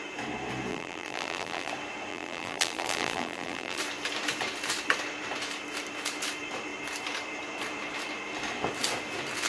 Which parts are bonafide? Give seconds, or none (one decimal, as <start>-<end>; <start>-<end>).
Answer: 0.0-0.7; 1.7-2.1; 3.8-9.5